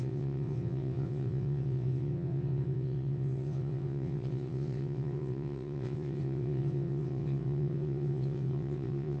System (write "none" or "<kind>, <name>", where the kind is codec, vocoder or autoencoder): vocoder, WaveNeXt